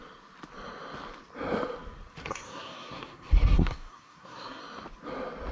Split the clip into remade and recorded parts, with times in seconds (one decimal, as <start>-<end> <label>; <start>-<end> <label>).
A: 0.0-2.2 recorded; 2.2-4.6 remade; 4.6-5.5 recorded